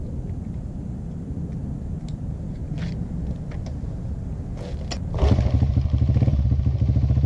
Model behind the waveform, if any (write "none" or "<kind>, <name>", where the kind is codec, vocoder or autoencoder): none